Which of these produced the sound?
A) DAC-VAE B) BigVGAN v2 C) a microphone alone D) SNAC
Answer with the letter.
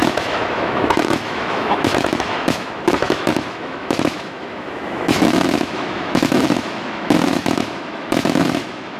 A